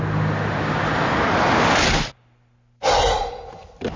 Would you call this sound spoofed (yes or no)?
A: no